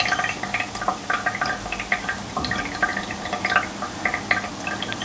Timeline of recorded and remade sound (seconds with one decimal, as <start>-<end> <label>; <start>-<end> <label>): 0.0-5.0 recorded